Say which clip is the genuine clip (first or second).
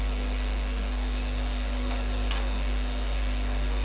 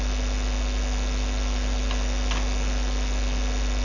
second